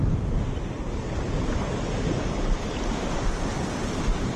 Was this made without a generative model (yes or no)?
yes